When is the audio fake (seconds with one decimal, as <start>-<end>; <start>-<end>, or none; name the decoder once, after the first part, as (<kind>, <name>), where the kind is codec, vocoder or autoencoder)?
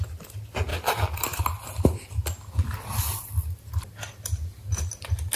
0.7-1.4 (vocoder, BigVGAN v2); 2.6-3.7